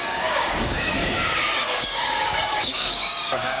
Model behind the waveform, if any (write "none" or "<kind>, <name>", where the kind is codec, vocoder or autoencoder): codec, DAC